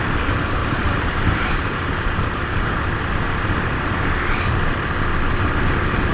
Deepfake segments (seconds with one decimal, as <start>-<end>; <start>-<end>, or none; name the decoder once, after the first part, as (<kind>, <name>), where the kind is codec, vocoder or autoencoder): 0.6-3.9 (vocoder, BigVGAN v2)